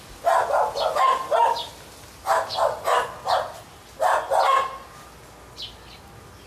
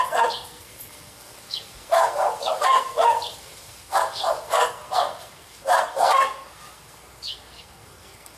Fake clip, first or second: second